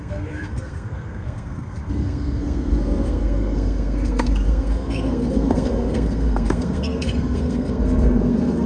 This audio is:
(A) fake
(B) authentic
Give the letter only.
A